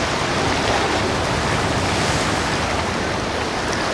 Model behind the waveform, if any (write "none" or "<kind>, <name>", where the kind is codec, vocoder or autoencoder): none